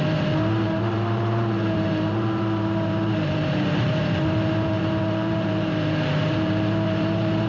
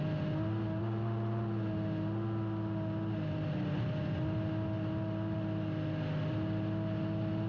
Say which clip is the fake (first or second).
first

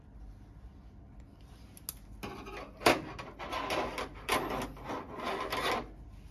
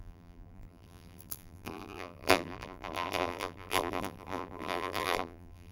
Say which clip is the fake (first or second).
second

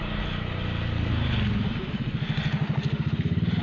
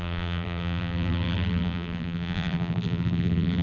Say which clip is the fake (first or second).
second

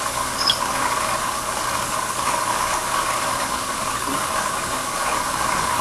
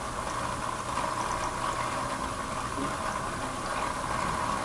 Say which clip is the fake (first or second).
first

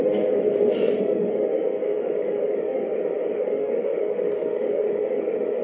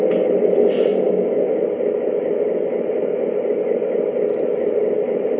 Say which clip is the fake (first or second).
first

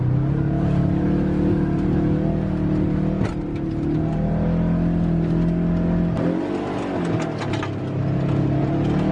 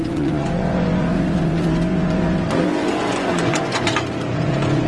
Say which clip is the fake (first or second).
second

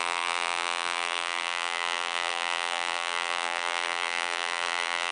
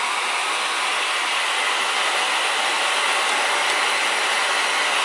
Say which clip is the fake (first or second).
first